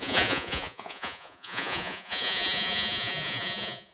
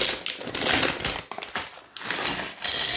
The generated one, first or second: first